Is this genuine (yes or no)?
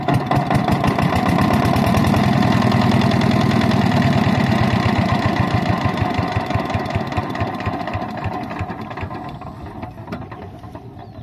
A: yes